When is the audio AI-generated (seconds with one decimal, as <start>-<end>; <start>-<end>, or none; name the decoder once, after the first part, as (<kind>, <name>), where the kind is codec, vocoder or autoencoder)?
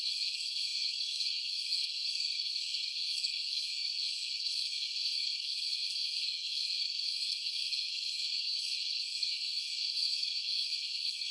0.0-11.3 (codec, SNAC)